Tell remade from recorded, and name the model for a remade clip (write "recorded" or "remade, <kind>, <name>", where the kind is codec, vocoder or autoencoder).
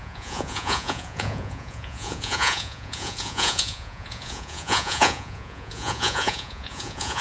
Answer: remade, vocoder, Vocos